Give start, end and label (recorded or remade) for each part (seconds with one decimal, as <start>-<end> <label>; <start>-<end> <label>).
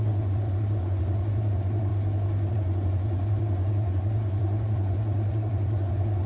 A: 0.0-1.9 remade; 1.9-2.5 recorded; 2.5-6.3 remade